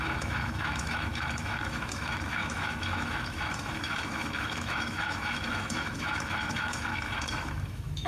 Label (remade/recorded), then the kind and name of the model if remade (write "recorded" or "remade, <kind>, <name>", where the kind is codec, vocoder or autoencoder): remade, autoencoder, DAC-VAE